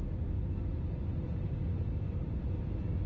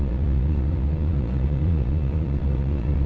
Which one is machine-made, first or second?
second